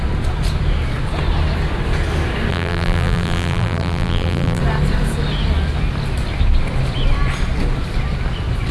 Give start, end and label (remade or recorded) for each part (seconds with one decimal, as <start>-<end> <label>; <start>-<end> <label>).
0.0-2.5 recorded; 2.5-4.6 remade; 4.6-8.7 recorded